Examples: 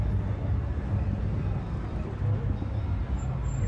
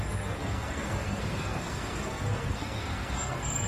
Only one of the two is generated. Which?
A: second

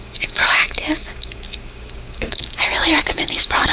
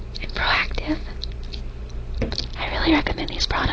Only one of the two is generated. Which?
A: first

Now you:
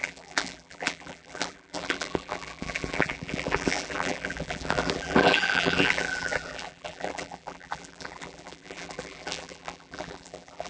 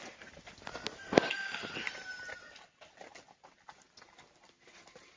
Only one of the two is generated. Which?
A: first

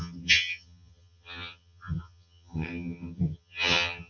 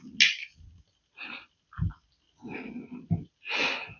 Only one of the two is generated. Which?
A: first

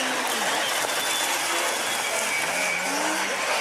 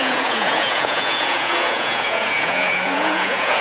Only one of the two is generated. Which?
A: second